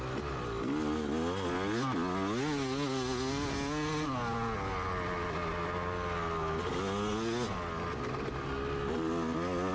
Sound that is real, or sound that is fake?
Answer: real